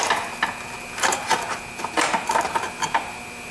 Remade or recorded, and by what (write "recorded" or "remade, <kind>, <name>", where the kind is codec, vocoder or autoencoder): recorded